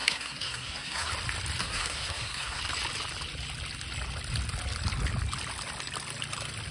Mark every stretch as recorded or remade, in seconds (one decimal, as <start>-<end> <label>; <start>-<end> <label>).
0.0-1.1 remade; 1.1-1.6 recorded; 1.6-2.6 remade; 2.6-6.7 recorded